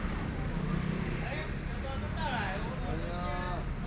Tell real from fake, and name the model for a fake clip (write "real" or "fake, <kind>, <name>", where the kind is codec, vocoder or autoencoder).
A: real